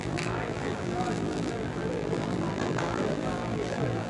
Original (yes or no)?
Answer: no